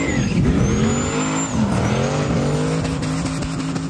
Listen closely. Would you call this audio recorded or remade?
recorded